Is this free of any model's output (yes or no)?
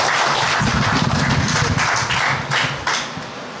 yes